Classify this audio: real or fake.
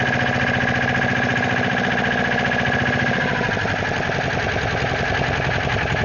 real